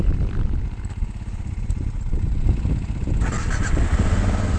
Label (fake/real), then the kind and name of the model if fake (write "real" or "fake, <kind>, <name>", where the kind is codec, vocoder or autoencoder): real